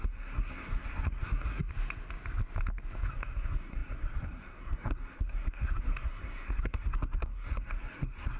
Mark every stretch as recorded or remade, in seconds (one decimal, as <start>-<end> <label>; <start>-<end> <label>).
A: 0.0-1.7 remade; 1.7-3.1 recorded; 3.1-8.4 remade

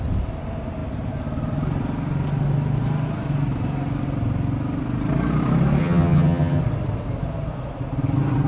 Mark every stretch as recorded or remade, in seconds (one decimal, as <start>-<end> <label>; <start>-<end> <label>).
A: 0.0-5.8 recorded; 5.8-6.6 remade; 6.6-8.5 recorded

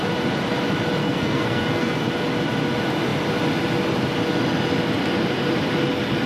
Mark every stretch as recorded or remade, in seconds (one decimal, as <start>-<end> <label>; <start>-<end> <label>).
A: 0.0-1.0 recorded; 1.0-2.1 remade; 2.1-6.3 recorded

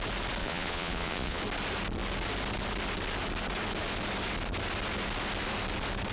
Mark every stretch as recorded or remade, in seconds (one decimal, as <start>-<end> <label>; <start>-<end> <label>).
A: 0.0-0.4 recorded; 0.4-1.4 remade; 1.4-6.1 recorded